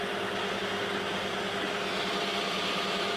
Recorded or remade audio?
recorded